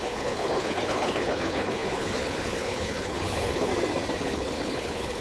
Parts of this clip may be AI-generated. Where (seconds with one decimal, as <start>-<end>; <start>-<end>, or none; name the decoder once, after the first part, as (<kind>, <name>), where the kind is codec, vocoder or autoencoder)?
0.0-3.7 (codec, HILCodec); 4.2-5.2